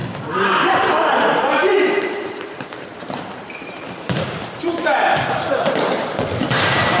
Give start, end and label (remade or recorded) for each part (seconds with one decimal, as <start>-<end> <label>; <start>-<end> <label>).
0.0-7.0 remade

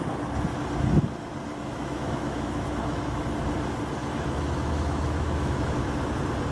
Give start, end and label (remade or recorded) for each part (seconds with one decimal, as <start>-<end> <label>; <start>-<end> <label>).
0.0-1.5 recorded; 1.5-3.2 remade; 3.2-4.0 recorded; 4.0-5.7 remade; 5.7-6.5 recorded

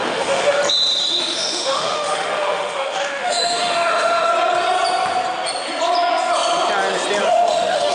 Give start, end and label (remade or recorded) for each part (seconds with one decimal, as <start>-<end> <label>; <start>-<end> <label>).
0.0-0.6 remade; 0.6-1.2 recorded; 1.2-4.3 remade; 4.3-7.3 recorded; 7.3-7.9 remade